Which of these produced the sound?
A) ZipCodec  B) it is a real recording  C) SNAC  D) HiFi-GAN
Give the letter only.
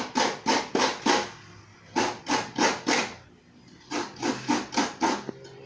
B